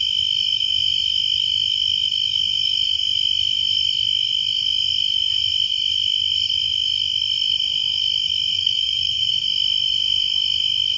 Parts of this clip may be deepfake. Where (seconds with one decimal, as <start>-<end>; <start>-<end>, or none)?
8.5-9.3